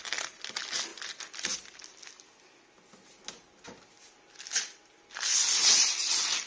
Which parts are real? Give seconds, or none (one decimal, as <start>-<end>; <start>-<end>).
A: 0.0-6.5